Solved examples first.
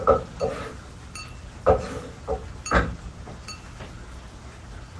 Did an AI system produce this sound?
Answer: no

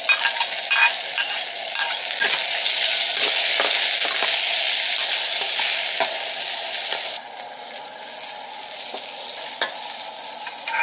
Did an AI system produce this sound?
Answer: no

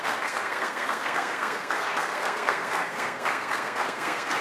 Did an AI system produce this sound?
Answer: yes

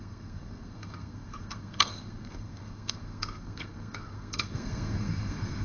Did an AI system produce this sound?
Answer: yes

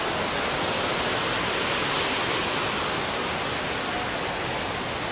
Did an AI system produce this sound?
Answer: no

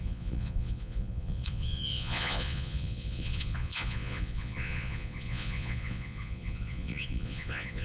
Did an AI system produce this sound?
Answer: yes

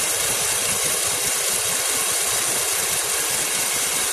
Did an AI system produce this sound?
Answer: no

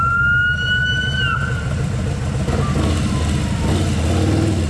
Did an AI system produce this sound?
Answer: no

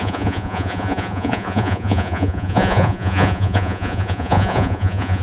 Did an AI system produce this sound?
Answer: yes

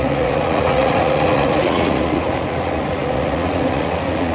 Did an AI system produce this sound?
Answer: yes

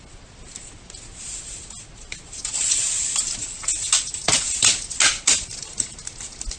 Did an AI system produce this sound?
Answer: no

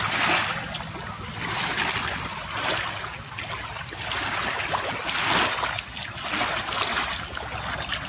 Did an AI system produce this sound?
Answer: no